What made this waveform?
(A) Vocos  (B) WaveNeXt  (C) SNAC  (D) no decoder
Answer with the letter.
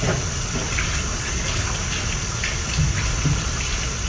D